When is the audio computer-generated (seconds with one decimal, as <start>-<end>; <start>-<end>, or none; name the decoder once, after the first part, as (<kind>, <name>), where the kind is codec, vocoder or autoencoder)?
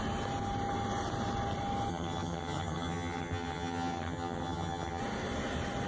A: 1.9-5.0 (vocoder, HiFi-GAN)